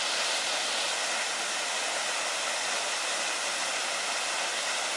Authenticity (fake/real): real